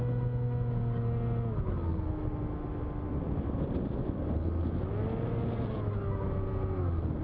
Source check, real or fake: real